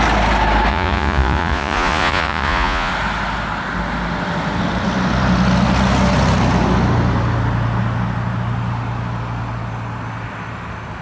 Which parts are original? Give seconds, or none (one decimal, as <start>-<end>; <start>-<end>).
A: 0.0-0.7; 2.9-11.0